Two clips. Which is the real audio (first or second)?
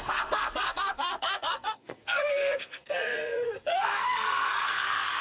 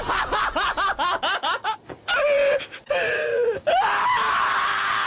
second